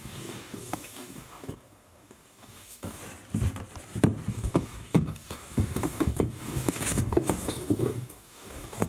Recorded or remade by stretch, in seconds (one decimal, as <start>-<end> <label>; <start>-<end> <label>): 0.0-3.0 remade; 3.0-4.3 recorded; 4.3-8.9 remade